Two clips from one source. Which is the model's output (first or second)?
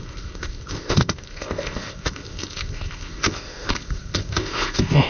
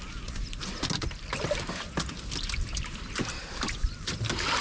first